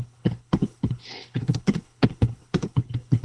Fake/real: fake